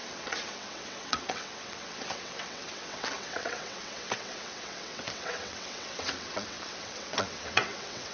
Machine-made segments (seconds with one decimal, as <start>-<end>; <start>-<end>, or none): 0.0-8.1